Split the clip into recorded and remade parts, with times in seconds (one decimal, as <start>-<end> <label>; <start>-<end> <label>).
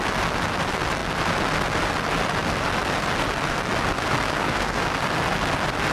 0.0-4.3 recorded; 4.3-4.8 remade; 4.8-5.9 recorded